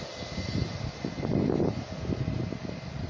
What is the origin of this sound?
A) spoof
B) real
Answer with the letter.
B